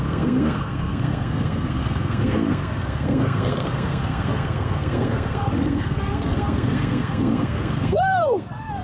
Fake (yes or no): yes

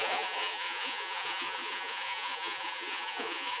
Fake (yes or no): yes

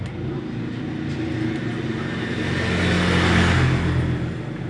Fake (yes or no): no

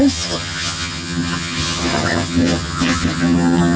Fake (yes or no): yes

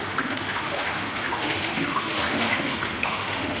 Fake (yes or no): yes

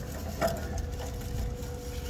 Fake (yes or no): no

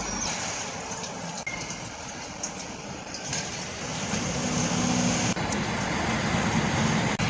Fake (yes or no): no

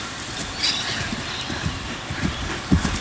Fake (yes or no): yes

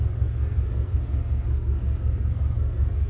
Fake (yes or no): yes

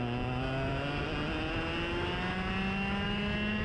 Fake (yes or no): no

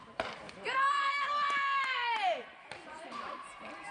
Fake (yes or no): yes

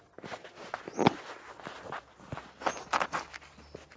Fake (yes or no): no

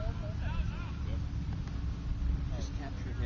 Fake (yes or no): no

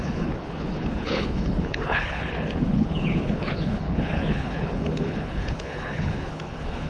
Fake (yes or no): yes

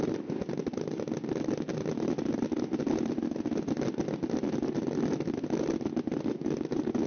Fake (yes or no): no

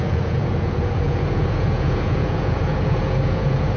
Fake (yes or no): yes